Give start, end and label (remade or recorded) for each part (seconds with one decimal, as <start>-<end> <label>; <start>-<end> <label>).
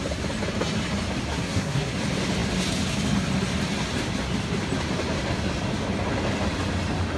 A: 0.0-1.3 recorded; 1.3-2.0 remade; 2.0-7.2 recorded